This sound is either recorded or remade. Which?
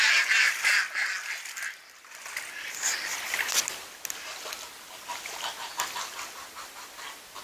recorded